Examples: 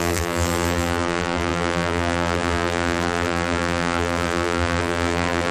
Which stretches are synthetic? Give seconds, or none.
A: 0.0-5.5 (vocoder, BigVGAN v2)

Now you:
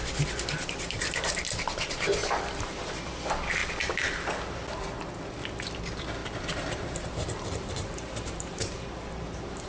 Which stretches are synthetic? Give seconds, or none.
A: 2.2-3.0 (vocoder, BigVGAN v2); 6.2-9.7

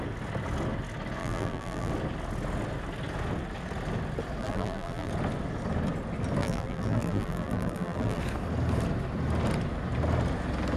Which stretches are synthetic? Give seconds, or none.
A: 1.2-1.9 (vocoder, BigVGAN v2); 4.4-5.1; 6.4-8.2

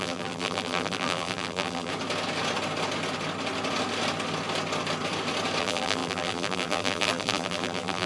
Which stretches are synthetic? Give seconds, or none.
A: 0.0-1.9 (vocoder, BigVGAN v2); 5.6-8.1

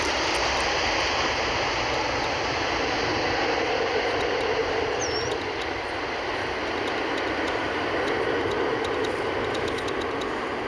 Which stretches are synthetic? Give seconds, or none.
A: 4.6-6.0 (vocoder, BigVGAN v2)

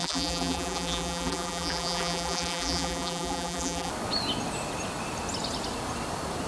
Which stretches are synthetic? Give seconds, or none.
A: 0.0-3.9 (vocoder, BigVGAN v2)

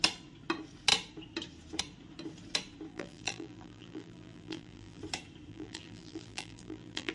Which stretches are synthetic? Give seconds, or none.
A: 2.9-5.0 (vocoder, BigVGAN v2); 5.5-7.1